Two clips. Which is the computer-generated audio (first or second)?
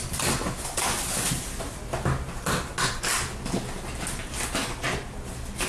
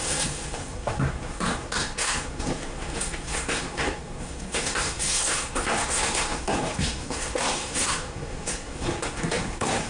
second